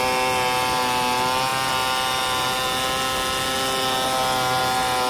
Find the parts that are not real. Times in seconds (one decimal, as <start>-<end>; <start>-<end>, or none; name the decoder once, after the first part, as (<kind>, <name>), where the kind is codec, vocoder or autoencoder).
none